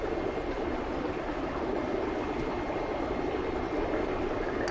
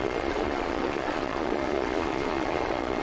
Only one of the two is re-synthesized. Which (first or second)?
second